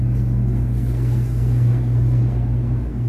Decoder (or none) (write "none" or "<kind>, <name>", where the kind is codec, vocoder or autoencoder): codec, SNAC